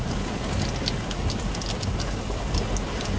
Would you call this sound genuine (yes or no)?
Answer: yes